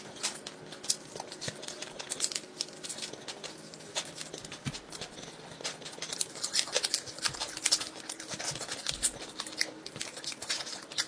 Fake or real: real